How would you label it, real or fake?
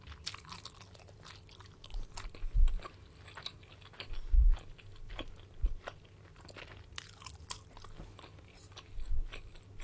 real